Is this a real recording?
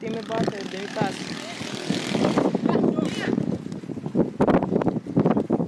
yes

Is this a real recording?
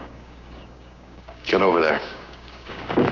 no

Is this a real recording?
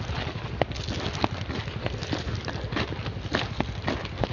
yes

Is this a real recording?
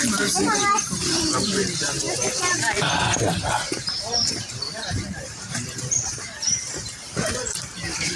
no